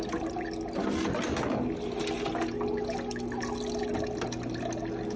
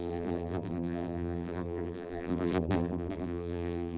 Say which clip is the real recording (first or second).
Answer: first